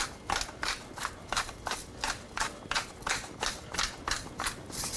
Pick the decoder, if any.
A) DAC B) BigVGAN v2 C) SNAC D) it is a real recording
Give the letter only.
D